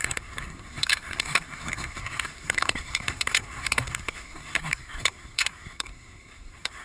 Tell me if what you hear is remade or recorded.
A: remade